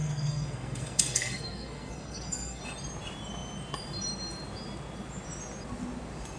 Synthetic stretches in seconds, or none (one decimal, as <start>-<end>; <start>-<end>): 0.0-2.6